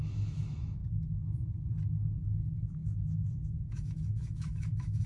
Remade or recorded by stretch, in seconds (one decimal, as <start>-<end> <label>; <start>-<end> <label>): 0.0-0.8 remade; 0.8-2.2 recorded; 2.2-5.1 remade